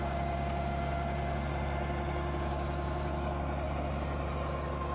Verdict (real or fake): real